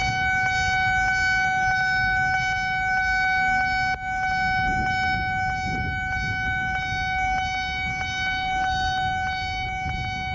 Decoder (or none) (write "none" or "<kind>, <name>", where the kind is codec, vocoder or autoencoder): none